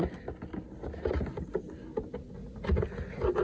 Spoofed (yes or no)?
no